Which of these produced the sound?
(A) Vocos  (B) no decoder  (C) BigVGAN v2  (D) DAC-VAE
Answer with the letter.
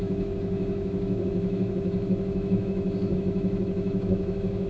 D